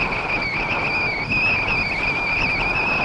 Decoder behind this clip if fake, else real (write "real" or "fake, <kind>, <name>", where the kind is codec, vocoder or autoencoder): real